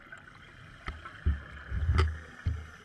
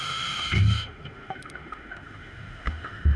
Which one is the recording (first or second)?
first